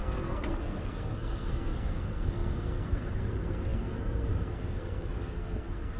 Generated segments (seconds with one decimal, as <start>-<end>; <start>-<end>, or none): 0.0-6.0